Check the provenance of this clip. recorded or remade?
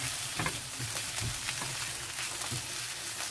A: recorded